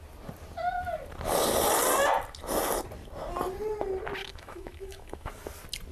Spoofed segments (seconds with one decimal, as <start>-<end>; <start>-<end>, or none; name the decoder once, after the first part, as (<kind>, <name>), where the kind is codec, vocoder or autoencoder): 4.2-5.3 (autoencoder, DAC-VAE)